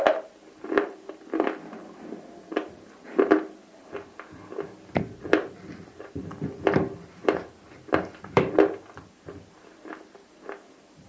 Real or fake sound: fake